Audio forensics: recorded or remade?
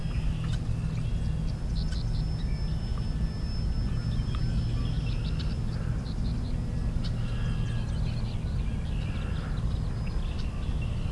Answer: recorded